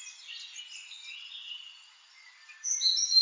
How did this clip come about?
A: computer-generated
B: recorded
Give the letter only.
B